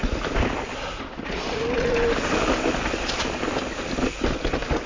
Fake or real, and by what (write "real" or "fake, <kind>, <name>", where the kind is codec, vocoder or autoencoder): real